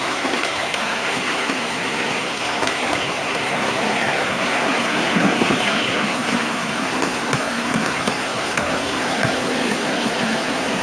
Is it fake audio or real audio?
fake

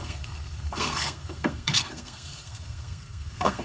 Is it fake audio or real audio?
fake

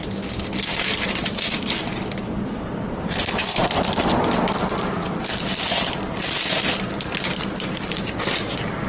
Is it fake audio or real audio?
real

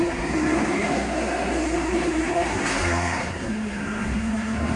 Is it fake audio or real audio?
fake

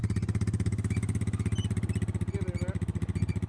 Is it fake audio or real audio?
real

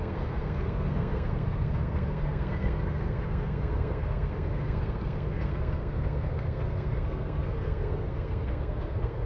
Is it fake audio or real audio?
fake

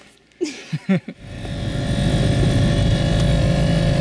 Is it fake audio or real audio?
real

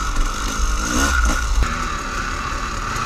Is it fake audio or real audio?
real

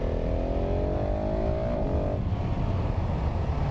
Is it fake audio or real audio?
real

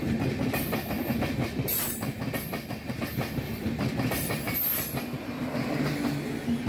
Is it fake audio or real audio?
real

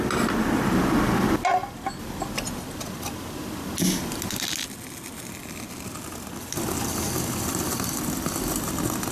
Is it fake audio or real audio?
real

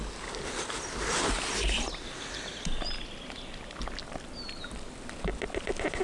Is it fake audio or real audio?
real